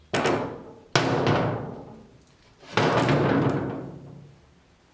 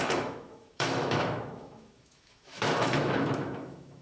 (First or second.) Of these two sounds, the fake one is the second